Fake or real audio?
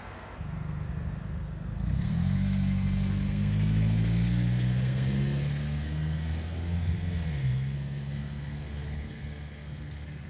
fake